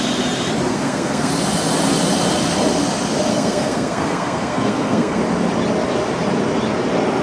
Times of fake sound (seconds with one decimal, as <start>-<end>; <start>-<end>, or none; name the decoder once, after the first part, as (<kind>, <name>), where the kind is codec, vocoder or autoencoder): 0.7-1.3 (codec, SNAC); 3.3-5.2